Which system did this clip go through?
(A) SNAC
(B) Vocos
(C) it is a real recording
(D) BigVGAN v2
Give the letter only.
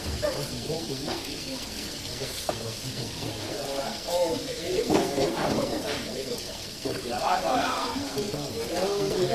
A